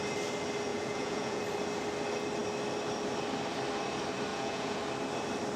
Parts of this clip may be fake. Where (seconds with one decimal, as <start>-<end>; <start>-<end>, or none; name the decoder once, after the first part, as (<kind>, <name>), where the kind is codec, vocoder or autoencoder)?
0.7-1.4 (vocoder, Vocos); 4.3-4.8